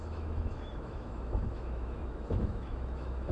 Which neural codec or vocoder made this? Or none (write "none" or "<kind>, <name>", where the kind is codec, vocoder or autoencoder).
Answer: autoencoder, DAC-VAE